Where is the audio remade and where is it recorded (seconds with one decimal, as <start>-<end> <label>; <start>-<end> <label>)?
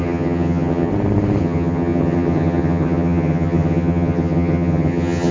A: 0.0-0.9 remade; 0.9-1.4 recorded; 1.4-5.3 remade